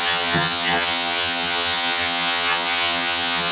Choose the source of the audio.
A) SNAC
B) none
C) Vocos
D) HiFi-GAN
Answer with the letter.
D